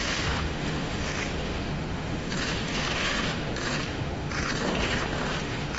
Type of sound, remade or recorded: remade